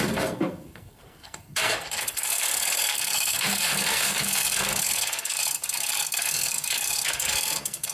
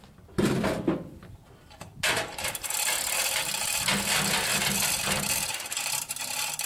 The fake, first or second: first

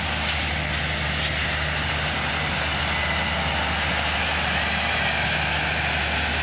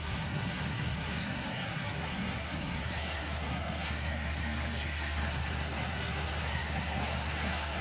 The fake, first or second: second